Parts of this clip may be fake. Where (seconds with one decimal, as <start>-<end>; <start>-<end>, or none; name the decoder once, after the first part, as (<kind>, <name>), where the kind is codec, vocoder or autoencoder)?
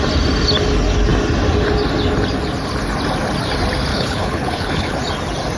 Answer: 3.9-5.0 (codec, HILCodec)